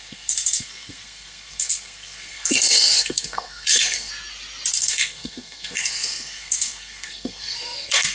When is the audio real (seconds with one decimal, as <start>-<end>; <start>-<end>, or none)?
4.1-4.7